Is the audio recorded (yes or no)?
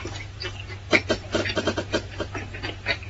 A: yes